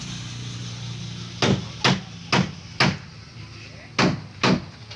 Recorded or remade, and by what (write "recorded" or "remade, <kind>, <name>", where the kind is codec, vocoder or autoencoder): recorded